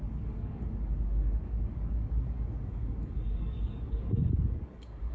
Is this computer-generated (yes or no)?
yes